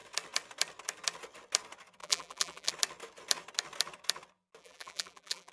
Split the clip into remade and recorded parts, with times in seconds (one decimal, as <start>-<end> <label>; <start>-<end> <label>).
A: 0.0-2.0 recorded; 2.0-2.7 remade; 2.7-4.6 recorded; 4.6-5.5 remade